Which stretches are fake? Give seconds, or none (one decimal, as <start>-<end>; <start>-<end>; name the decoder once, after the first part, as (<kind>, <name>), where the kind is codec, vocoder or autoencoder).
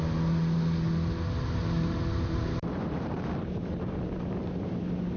1.6-4.7 (vocoder, BigVGAN v2)